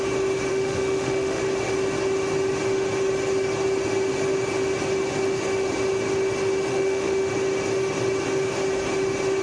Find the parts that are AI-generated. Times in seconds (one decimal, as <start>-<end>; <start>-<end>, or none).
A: 0.5-1.4; 6.7-7.3